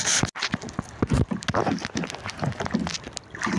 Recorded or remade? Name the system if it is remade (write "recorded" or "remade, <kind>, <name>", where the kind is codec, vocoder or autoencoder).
recorded